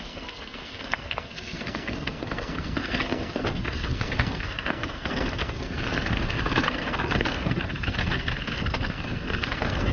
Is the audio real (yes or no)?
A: no